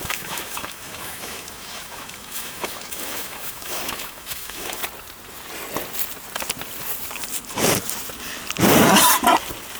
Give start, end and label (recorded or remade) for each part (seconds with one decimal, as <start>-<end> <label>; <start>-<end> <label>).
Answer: 0.0-4.8 remade; 4.8-9.8 recorded